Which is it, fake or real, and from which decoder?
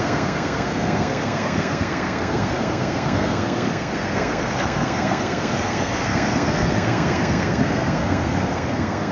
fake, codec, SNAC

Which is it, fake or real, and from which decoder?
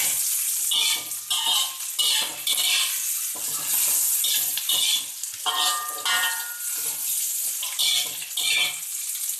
real